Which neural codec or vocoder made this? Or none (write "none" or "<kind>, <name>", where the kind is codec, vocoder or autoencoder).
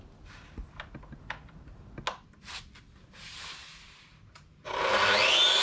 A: none